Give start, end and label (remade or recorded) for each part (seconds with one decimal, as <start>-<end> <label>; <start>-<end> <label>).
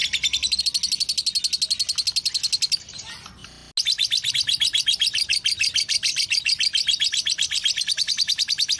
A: 0.0-8.8 recorded